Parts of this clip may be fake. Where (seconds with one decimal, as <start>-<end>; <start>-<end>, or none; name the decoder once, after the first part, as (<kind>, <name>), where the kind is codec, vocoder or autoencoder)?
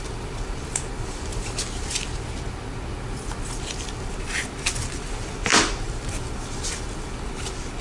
0.0-1.3 (vocoder, BigVGAN v2); 4.1-7.8